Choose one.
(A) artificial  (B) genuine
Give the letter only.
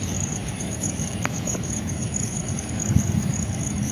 A